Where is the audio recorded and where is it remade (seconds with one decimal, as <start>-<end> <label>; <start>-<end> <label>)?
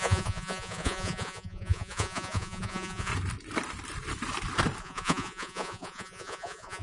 0.0-3.1 remade; 3.1-4.8 recorded; 4.8-6.8 remade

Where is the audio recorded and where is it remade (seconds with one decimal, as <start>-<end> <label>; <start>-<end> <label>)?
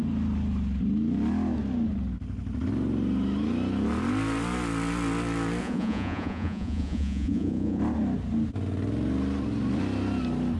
0.0-5.6 recorded; 5.6-7.8 remade; 7.8-10.6 recorded